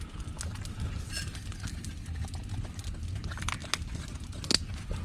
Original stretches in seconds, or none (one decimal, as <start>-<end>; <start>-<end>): 0.0-5.0